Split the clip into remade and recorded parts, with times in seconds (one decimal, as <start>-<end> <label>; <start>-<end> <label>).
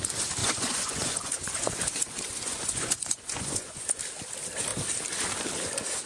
0.0-0.4 recorded; 0.4-4.0 remade; 4.0-6.1 recorded